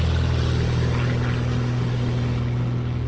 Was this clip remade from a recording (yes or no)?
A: no